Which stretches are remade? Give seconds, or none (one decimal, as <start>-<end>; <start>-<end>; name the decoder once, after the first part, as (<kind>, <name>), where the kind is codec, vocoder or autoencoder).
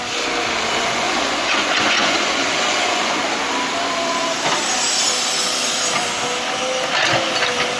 0.8-3.2 (vocoder, Vocos)